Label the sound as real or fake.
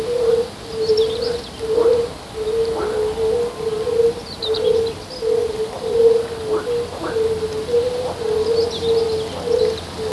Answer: real